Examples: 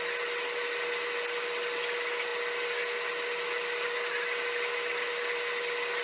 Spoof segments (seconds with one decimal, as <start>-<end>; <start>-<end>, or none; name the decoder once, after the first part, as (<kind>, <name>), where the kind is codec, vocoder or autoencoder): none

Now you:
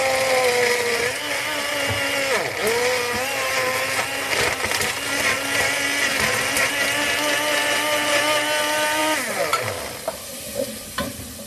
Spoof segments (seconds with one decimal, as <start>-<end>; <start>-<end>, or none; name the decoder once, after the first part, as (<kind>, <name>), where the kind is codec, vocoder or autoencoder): 9.0-11.5 (vocoder, BigVGAN v2)

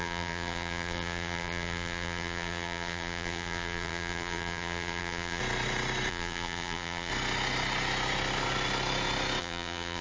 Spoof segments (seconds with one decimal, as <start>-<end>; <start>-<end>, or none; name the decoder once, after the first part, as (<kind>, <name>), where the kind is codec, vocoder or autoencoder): 0.0-5.4 (vocoder, BigVGAN v2); 6.1-7.1; 9.4-10.0

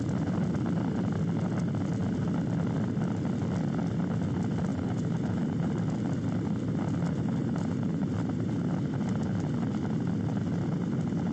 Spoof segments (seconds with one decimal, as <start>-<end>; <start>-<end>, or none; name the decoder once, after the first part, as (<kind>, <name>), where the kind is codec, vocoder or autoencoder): 4.7-5.7 (vocoder, BigVGAN v2); 7.4-8.5

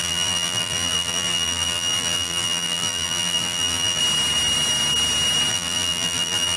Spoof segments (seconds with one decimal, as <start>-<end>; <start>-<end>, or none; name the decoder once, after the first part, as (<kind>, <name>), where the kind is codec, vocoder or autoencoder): 0.0-4.0 (vocoder, BigVGAN v2); 5.5-6.6

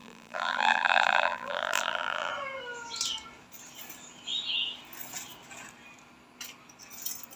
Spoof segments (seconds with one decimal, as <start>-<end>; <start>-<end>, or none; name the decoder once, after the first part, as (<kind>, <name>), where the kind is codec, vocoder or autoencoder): 0.0-2.3 (vocoder, BigVGAN v2)

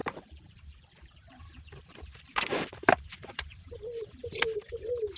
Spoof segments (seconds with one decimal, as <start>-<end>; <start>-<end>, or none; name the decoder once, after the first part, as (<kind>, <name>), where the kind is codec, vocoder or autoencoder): 0.0-1.4 (vocoder, BigVGAN v2); 1.8-4.7